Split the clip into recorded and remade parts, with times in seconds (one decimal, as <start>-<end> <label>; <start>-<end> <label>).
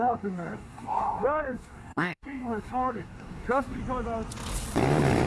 0.0-3.8 remade; 3.8-5.3 recorded